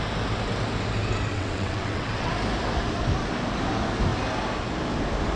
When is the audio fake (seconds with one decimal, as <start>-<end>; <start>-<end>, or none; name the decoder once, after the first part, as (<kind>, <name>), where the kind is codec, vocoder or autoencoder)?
1.3-2.3 (vocoder, WaveNeXt)

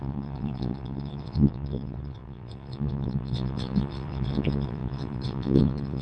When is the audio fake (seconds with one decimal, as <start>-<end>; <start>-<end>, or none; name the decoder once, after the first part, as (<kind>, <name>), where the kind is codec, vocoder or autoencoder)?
0.0-6.0 (vocoder, WaveNeXt)

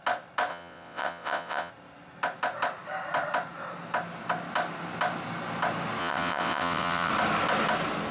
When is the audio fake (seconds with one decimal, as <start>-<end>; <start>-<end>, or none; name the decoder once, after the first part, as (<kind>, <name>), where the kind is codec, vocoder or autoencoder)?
0.5-1.7 (vocoder, WaveNeXt); 6.0-7.1

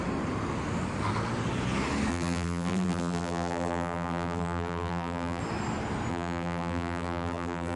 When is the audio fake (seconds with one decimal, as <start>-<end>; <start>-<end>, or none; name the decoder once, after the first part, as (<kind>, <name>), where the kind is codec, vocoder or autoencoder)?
2.1-5.4 (vocoder, BigVGAN v2); 6.1-7.8

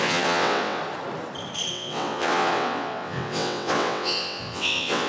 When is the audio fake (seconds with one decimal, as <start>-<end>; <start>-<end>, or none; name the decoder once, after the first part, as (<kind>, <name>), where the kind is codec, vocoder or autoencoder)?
0.0-0.8 (vocoder, WaveNeXt); 1.7-5.1

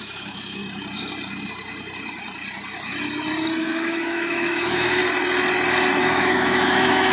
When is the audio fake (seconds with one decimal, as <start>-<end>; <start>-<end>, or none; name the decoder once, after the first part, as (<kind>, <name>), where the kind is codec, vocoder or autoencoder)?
0.0-0.6 (autoencoder, DAC-VAE); 3.6-5.0; 6.0-7.1

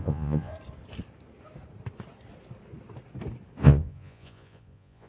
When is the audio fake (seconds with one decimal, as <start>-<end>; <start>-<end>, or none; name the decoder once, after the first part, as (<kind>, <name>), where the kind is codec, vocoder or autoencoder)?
0.0-0.5 (vocoder, Vocos); 3.6-5.1